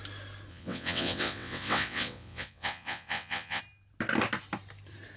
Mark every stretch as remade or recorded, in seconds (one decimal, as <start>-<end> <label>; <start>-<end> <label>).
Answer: 0.0-0.5 recorded; 0.5-3.6 remade; 3.6-5.2 recorded